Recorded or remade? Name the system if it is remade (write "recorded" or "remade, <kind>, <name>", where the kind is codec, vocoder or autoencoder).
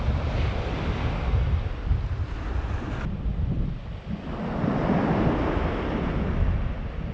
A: recorded